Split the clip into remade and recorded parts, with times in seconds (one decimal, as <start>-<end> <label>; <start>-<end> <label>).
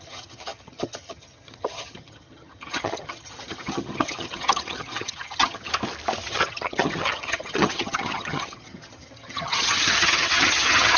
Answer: 0.0-5.7 remade; 5.7-6.3 recorded; 6.3-11.0 remade